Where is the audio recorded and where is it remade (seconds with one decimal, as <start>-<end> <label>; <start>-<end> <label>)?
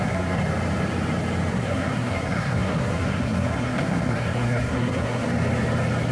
0.0-0.4 remade; 0.4-1.5 recorded; 1.5-5.2 remade; 5.2-6.1 recorded